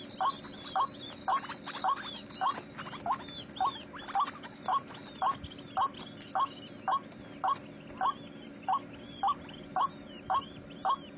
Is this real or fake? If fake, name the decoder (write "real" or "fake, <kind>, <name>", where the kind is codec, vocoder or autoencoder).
real